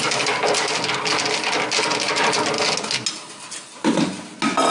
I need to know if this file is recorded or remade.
recorded